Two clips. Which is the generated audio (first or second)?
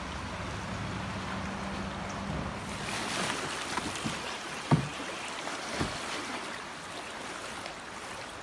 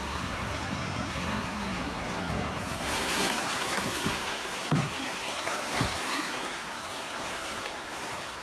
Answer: second